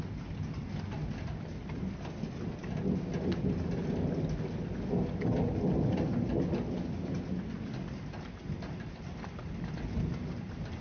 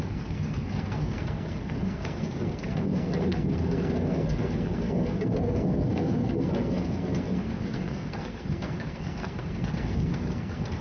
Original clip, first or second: first